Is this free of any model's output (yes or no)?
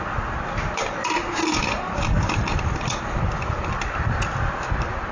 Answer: yes